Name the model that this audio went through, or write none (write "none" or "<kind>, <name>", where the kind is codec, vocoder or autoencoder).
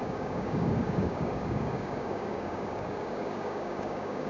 codec, DAC